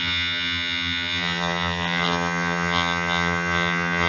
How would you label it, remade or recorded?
remade